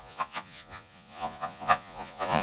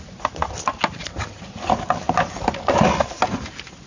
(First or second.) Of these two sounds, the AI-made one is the first